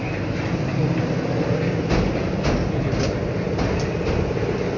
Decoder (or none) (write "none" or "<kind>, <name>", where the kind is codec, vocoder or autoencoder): none